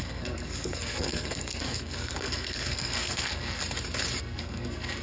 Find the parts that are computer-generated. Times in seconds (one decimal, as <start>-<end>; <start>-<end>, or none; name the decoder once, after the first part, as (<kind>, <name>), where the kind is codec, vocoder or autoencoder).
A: 0.0-3.6 (codec, SNAC); 4.2-5.0